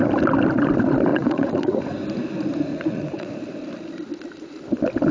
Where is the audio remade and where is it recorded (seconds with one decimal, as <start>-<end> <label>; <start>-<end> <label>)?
0.0-1.1 recorded; 1.1-1.8 remade; 1.8-2.7 recorded; 2.7-3.3 remade; 3.3-5.1 recorded